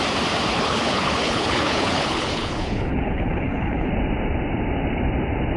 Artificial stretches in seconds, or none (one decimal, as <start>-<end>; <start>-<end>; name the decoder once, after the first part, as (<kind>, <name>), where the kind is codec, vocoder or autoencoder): 0.5-3.9 (codec, HILCodec)